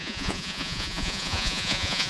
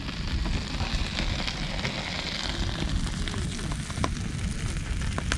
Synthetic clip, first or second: first